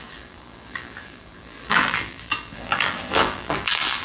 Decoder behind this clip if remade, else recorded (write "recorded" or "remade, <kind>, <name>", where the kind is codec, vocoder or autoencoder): remade, vocoder, BigVGAN v2